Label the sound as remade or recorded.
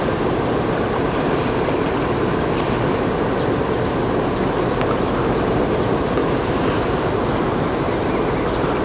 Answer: recorded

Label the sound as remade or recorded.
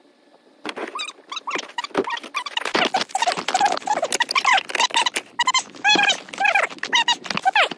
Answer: recorded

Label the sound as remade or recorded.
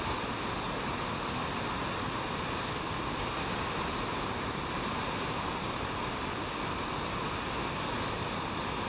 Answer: recorded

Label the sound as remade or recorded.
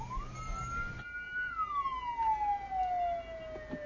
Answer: recorded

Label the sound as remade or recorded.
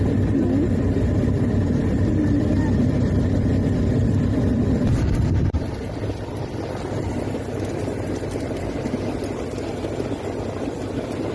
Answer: remade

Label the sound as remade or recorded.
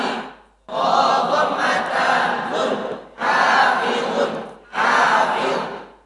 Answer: recorded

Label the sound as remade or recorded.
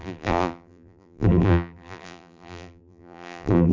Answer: remade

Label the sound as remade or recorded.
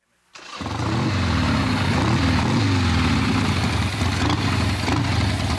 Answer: recorded